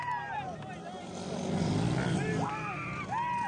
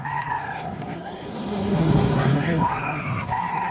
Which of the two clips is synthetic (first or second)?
second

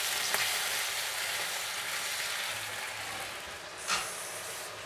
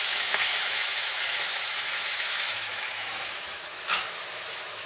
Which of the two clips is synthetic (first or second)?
second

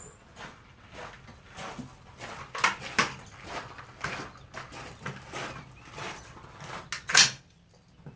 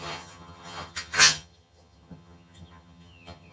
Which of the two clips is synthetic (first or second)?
second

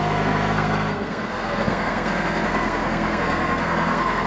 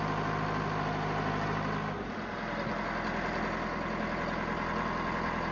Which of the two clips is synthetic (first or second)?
first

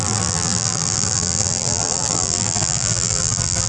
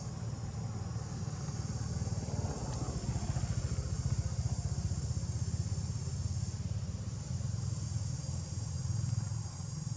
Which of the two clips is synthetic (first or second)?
first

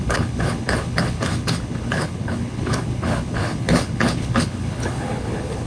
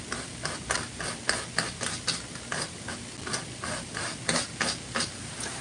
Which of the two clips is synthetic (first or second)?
first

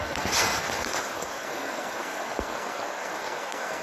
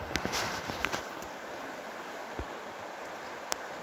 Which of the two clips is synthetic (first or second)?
first